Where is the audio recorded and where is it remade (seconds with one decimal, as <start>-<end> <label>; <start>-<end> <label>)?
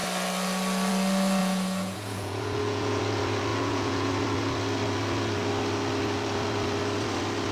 0.0-1.4 recorded; 1.4-3.0 remade; 3.0-3.5 recorded; 3.5-4.1 remade; 4.1-7.5 recorded